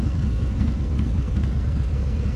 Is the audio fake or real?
fake